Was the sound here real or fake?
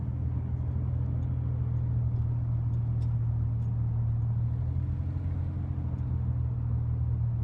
real